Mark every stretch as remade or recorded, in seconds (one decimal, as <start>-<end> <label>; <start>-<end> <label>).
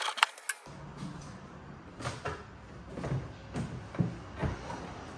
0.0-5.2 recorded